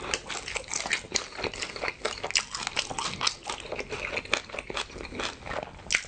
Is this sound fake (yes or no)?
no